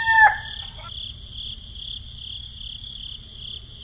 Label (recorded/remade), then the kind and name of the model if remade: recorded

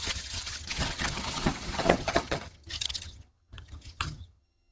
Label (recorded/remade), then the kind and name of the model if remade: remade, vocoder, HiFi-GAN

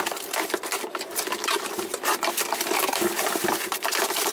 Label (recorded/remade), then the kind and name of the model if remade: remade, vocoder, BigVGAN v2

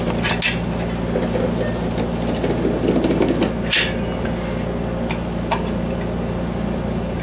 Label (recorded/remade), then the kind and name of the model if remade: recorded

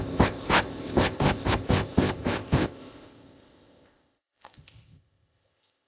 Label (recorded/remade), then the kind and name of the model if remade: remade, codec, ZipCodec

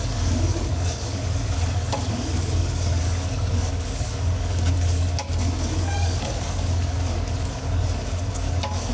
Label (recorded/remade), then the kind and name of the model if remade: remade, codec, DAC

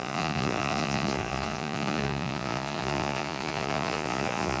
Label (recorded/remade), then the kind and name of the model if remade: remade, vocoder, Vocos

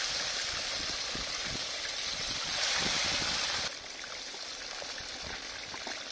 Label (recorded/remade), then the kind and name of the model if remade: remade, vocoder, BigVGAN v2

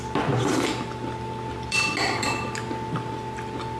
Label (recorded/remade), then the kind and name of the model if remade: recorded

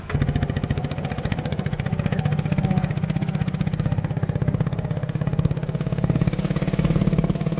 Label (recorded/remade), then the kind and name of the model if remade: recorded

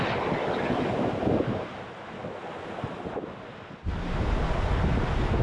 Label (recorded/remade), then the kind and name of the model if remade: recorded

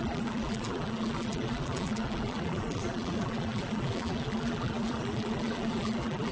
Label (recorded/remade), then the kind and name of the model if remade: remade, vocoder, BigVGAN v2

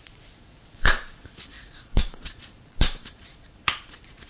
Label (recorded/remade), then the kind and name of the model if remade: remade, vocoder, Vocos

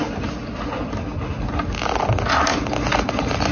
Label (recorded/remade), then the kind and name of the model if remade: recorded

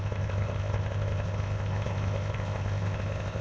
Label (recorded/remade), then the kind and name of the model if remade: remade, codec, ZipCodec